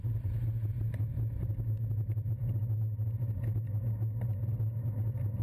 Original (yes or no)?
yes